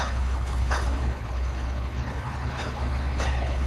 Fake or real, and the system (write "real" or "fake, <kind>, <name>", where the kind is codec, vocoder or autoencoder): fake, codec, HILCodec